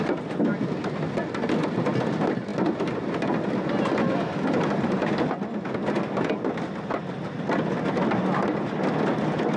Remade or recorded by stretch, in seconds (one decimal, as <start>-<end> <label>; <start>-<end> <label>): 0.0-9.6 recorded